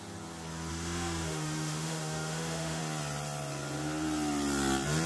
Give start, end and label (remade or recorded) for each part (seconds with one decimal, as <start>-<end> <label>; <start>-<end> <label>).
0.0-0.7 recorded; 0.7-2.8 remade; 2.8-5.1 recorded